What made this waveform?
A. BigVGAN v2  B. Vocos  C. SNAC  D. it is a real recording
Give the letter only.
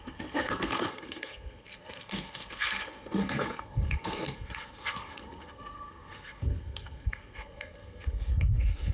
C